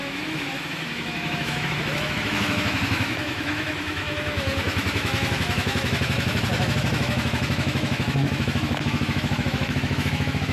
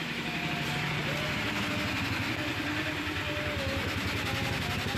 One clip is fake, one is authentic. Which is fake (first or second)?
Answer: first